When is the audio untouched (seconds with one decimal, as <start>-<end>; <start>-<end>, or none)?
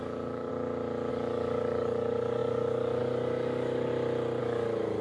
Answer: 0.5-1.1; 3.9-4.4